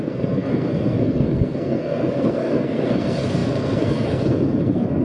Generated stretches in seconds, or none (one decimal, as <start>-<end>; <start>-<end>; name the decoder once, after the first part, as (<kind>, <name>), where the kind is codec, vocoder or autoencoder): 0.0-5.0 (codec, SNAC)